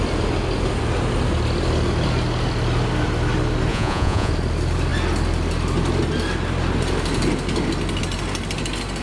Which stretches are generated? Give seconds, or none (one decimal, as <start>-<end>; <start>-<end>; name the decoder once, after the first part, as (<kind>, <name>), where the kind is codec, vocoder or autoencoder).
3.7-4.3 (vocoder, Vocos)